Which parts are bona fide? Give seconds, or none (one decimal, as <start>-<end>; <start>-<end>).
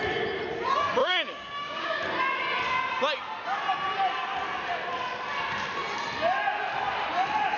0.0-1.0; 2.0-7.6